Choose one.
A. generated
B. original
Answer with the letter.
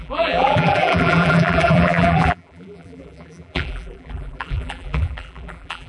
A